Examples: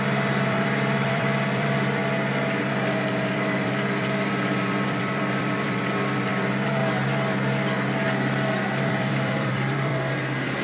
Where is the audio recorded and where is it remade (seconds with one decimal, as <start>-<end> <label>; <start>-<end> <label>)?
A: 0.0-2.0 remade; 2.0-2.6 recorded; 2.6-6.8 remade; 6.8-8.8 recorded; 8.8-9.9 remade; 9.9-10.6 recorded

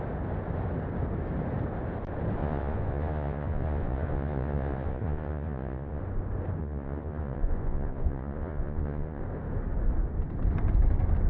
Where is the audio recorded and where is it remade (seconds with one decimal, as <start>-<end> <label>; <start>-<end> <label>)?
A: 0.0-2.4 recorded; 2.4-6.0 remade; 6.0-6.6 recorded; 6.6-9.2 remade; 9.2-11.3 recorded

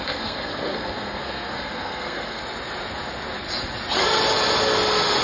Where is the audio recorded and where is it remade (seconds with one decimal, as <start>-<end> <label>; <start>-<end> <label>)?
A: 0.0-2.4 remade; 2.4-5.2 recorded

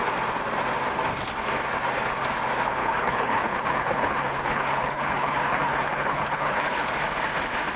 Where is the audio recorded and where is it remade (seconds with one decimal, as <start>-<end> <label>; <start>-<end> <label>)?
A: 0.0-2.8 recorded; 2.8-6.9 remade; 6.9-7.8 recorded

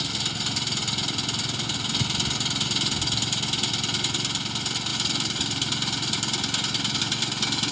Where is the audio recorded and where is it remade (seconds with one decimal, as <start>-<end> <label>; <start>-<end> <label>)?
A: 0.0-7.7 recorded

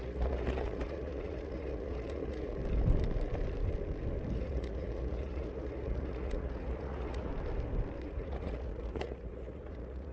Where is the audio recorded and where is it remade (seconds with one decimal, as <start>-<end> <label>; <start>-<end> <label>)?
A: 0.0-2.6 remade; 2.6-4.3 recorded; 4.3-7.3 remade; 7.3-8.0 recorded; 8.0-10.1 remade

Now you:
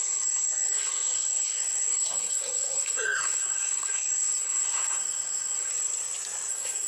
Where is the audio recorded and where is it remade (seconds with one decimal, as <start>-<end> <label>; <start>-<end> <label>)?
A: 0.0-5.7 remade; 5.7-6.5 recorded; 6.5-6.9 remade